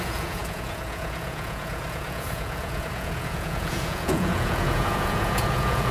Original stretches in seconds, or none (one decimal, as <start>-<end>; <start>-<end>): none